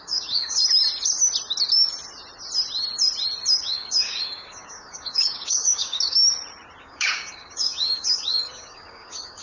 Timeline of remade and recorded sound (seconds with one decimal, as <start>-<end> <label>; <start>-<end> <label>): 0.0-0.6 remade; 0.6-3.6 recorded; 3.6-6.2 remade; 6.2-6.8 recorded; 6.8-9.4 remade